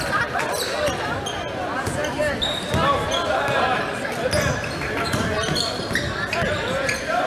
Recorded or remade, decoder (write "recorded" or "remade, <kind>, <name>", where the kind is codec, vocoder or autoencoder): recorded